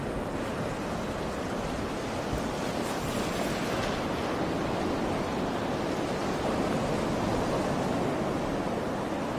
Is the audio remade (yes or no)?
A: no